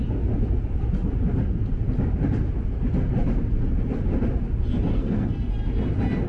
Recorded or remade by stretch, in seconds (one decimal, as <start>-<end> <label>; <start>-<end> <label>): 0.0-4.9 recorded; 4.9-5.5 remade; 5.5-6.3 recorded